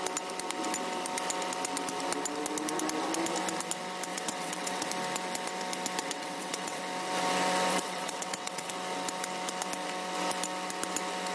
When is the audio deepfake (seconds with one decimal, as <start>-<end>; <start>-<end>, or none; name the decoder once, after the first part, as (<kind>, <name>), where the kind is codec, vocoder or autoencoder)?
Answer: 4.1-4.9 (vocoder, WaveNeXt); 6.0-6.8; 7.7-8.7